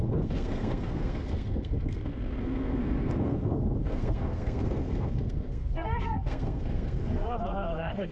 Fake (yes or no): yes